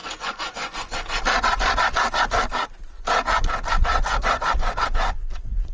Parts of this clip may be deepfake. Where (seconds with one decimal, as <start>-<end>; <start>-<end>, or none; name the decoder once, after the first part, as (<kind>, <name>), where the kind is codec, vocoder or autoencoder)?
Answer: 0.0-1.2 (vocoder, Vocos); 3.9-5.3